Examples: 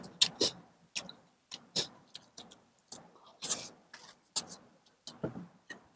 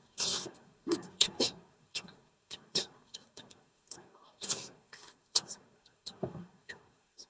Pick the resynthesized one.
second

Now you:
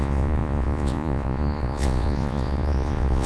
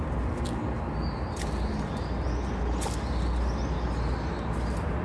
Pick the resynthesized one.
first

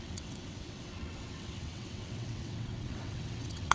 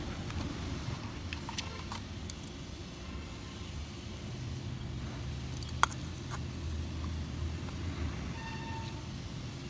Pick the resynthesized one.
first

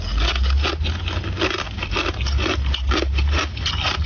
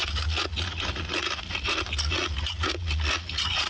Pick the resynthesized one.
second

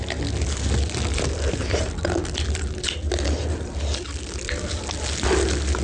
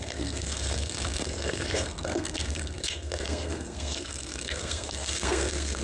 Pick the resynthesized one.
second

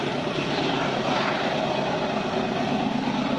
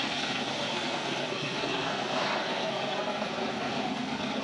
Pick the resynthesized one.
second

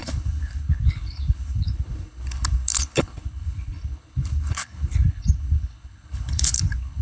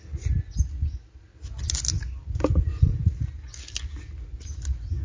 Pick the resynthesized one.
first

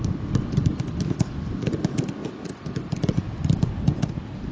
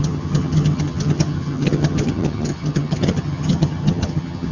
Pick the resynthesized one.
second